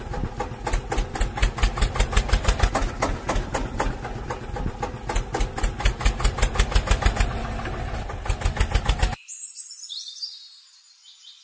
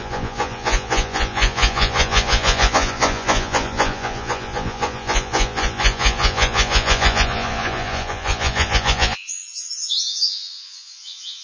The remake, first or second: second